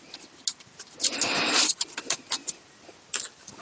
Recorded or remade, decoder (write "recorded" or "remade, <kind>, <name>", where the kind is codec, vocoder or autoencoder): recorded